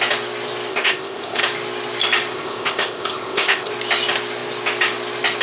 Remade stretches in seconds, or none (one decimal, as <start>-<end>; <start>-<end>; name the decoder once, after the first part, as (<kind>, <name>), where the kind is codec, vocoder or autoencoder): 0.7-1.4 (codec, ZipCodec); 2.3-3.7